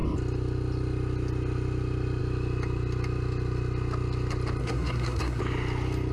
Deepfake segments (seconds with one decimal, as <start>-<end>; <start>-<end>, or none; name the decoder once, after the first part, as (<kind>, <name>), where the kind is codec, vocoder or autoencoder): 4.6-5.4 (codec, SNAC)